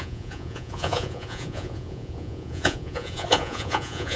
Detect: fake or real fake